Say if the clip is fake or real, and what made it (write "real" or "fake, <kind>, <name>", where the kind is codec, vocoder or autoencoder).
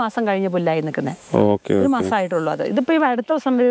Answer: fake, autoencoder, DAC-VAE